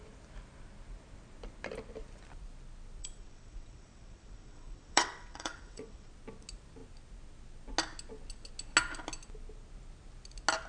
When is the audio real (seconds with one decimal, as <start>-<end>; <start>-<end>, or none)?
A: 0.0-3.0; 6.1-10.7